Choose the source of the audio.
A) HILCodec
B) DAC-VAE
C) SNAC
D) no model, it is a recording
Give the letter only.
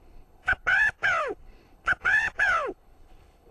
A